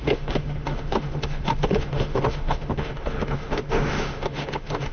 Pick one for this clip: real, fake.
fake